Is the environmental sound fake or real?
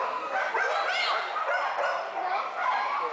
real